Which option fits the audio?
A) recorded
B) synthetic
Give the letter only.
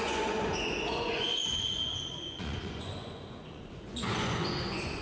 B